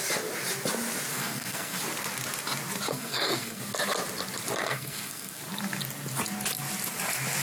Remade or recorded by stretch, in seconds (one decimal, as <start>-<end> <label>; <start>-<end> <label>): 0.0-1.1 recorded; 1.1-1.8 remade; 1.8-2.9 recorded; 2.9-3.6 remade; 3.6-4.6 recorded; 4.6-5.4 remade; 5.4-7.4 recorded